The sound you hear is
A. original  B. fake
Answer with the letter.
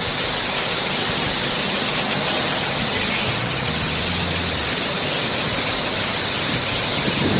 A